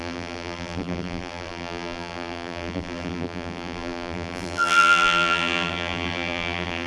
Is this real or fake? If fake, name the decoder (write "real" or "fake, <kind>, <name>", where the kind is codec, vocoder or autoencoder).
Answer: fake, vocoder, BigVGAN v2